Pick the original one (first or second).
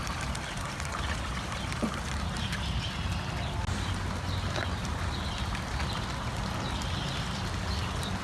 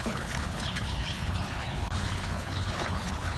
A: first